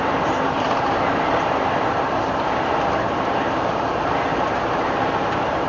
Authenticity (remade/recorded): remade